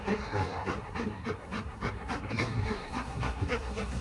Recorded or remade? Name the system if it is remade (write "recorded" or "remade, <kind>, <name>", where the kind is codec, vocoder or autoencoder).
remade, codec, SNAC